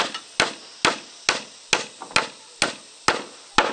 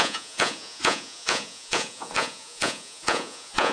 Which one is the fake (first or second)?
second